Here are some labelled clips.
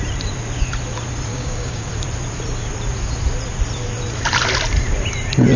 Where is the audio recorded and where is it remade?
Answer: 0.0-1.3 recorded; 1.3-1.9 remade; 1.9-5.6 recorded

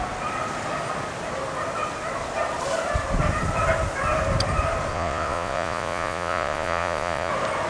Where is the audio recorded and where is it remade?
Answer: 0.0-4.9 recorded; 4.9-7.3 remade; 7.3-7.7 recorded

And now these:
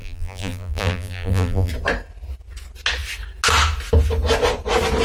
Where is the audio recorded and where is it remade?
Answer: 0.0-1.7 remade; 1.7-5.0 recorded

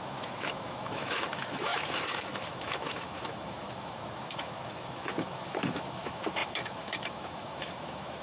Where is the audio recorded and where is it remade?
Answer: 0.0-8.2 remade

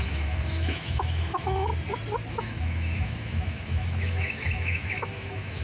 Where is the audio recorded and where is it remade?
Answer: 0.0-1.7 remade; 1.7-2.3 recorded; 2.3-5.6 remade

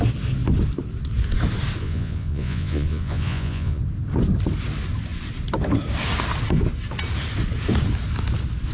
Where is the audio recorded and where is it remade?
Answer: 0.0-1.8 recorded; 1.8-3.8 remade; 3.8-8.7 recorded